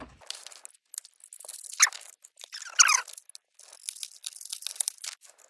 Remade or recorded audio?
recorded